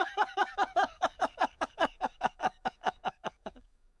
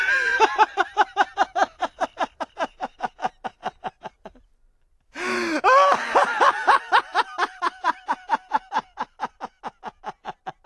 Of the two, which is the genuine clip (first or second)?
second